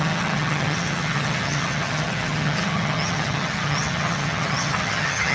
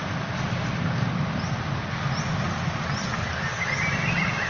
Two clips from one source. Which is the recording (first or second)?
second